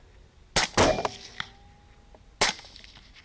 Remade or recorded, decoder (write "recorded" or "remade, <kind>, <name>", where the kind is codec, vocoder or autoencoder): recorded